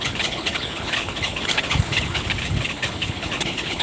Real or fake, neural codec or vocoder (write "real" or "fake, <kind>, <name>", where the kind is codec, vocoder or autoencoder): fake, codec, HILCodec